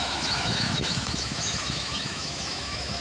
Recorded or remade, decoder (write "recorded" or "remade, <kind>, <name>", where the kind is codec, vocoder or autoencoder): remade, autoencoder, DAC-VAE